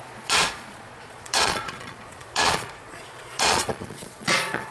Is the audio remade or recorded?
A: remade